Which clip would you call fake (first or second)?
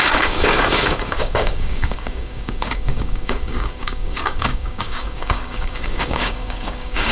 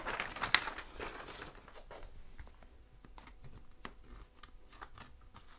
first